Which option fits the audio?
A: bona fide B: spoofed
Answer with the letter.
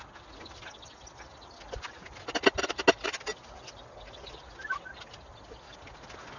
A